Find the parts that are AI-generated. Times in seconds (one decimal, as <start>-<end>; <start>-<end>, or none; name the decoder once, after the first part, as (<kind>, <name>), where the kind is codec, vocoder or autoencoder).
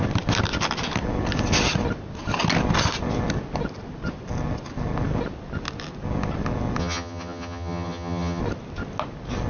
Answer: 6.8-8.4 (vocoder, HiFi-GAN)